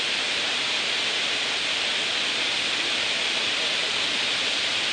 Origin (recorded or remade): recorded